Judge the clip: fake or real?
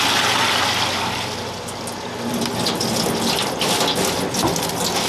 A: real